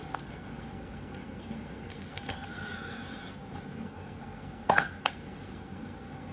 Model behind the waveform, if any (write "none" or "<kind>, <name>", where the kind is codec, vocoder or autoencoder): codec, SNAC